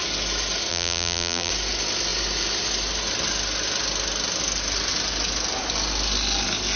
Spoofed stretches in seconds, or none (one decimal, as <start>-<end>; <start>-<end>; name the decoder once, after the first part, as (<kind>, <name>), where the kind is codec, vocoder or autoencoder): 0.7-1.5 (vocoder, BigVGAN v2)